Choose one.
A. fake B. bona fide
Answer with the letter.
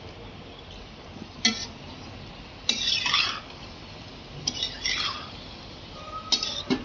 B